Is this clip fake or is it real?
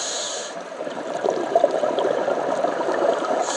fake